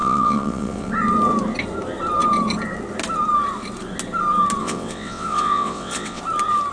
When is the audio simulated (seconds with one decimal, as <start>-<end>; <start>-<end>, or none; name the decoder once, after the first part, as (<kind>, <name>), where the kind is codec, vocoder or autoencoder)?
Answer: 0.0-0.9 (vocoder, WaveNeXt); 4.6-6.2